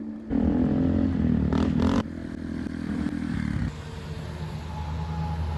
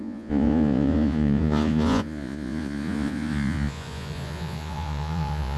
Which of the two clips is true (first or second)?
first